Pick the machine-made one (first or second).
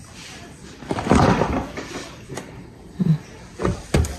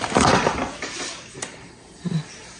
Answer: first